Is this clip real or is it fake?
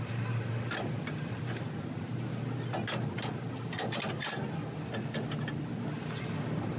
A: real